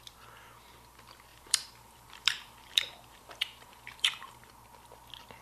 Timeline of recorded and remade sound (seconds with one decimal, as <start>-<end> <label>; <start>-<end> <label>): 0.0-1.3 recorded; 1.3-4.5 remade; 4.5-5.4 recorded